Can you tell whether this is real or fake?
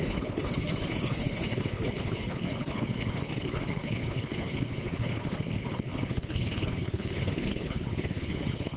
fake